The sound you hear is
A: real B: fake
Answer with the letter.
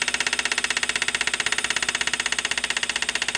A